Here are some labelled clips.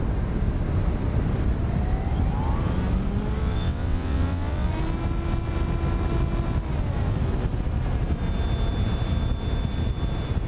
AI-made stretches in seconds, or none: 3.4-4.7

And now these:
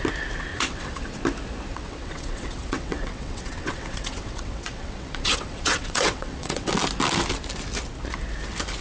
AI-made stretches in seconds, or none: 0.5-1.2; 1.7-6.7

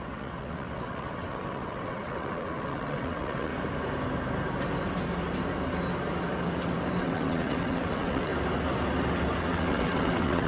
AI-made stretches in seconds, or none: 0.0-3.5; 7.0-8.3; 9.4-10.5

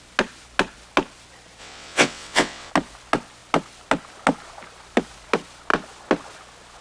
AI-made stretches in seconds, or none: 1.6-2.7

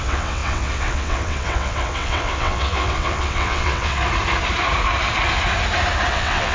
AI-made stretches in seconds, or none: 0.0-4.0; 6.1-6.5